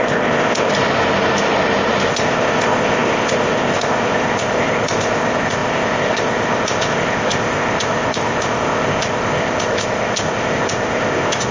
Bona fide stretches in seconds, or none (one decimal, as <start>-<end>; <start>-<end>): 0.7-2.1